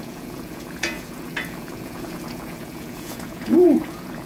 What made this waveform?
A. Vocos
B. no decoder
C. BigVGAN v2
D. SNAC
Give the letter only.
A